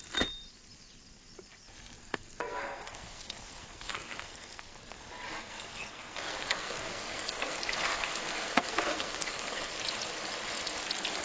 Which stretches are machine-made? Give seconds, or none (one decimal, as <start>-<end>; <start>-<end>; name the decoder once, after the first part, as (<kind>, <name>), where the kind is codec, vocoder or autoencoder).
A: 2.0-5.0 (codec, SNAC); 5.4-9.8